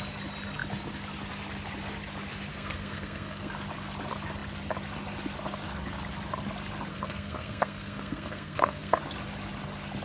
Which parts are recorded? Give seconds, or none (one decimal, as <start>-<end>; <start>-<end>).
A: 0.0-2.5; 3.5-6.9; 9.0-10.0